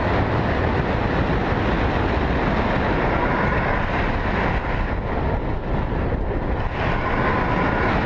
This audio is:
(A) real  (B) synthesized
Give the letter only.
A